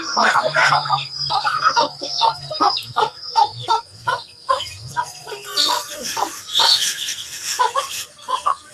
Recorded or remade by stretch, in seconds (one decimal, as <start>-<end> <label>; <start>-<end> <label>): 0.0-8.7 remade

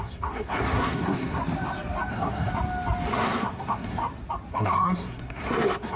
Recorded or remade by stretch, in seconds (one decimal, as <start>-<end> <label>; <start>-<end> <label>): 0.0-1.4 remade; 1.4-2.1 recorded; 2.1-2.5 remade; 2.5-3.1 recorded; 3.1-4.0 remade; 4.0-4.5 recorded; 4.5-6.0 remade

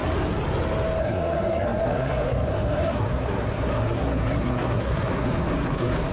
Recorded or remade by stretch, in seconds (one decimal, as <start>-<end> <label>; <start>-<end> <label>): 0.0-1.0 recorded; 1.0-6.1 remade

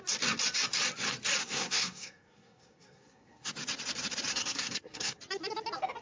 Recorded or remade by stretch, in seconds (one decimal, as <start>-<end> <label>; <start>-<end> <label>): 0.0-1.4 recorded; 1.4-3.5 remade; 3.5-4.3 recorded; 4.3-5.2 remade; 5.2-6.0 recorded

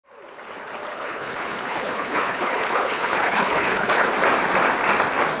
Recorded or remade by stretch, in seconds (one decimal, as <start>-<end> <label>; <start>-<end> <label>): 0.0-0.9 recorded; 0.9-4.1 remade; 4.1-5.4 recorded

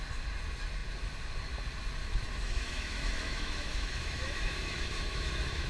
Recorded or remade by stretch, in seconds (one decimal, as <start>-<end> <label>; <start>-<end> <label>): 0.0-2.0 recorded; 2.0-5.7 remade

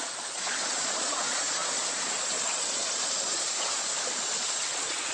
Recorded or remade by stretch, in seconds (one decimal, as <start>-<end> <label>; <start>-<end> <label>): 0.0-3.9 remade; 3.9-4.4 recorded; 4.4-5.1 remade

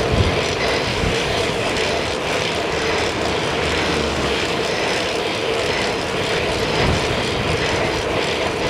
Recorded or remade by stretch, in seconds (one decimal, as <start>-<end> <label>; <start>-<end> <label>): 0.0-0.9 recorded; 0.9-1.7 remade; 1.7-4.1 recorded; 4.1-4.7 remade; 4.7-8.7 recorded